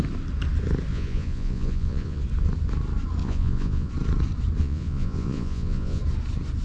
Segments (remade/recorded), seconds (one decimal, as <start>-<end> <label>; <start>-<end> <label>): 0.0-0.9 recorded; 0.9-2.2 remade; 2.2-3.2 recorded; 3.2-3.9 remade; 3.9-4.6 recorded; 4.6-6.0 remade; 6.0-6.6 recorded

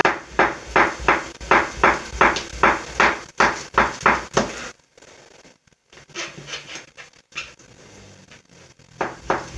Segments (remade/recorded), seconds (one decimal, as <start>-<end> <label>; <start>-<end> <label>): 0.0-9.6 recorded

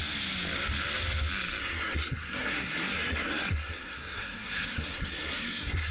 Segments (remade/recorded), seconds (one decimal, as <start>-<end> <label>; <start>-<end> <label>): 0.0-1.6 recorded; 1.6-5.9 remade

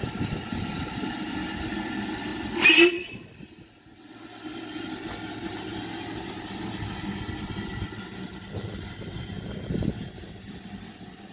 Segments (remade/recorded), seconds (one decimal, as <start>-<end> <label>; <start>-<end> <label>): 0.0-11.3 recorded

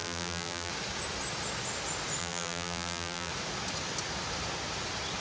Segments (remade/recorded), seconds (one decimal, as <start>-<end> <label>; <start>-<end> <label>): 0.0-0.7 remade; 0.7-2.2 recorded; 2.2-3.3 remade; 3.3-5.2 recorded